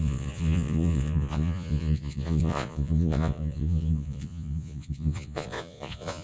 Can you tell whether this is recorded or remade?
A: remade